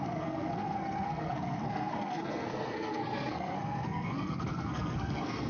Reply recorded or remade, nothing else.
remade